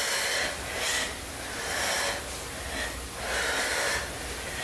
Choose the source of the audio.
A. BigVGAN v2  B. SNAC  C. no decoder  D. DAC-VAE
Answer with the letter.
C